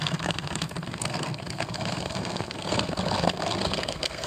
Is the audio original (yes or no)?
no